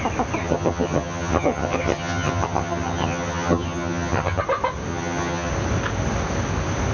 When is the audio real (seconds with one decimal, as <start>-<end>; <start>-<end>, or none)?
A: 0.0-0.4; 4.4-4.9; 5.5-6.9